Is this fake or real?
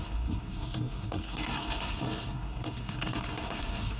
fake